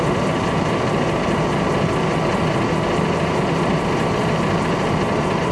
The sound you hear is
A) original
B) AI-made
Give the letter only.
A